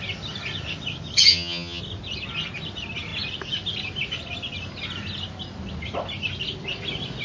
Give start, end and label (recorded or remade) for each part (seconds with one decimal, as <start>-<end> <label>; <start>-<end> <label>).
0.0-1.3 recorded; 1.3-1.8 remade; 1.8-7.2 recorded

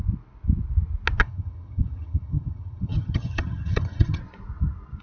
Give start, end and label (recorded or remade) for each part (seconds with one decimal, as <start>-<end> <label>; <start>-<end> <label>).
0.0-1.2 recorded; 1.2-4.2 remade; 4.2-5.0 recorded

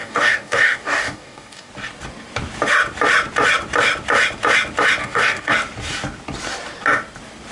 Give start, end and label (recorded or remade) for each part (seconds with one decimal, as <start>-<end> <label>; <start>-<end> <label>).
0.0-1.7 remade; 1.7-5.0 recorded; 5.0-5.5 remade; 5.5-7.5 recorded

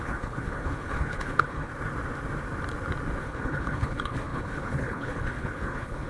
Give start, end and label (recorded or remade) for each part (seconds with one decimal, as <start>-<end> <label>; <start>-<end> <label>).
0.0-1.7 remade; 1.7-3.2 recorded; 3.2-6.1 remade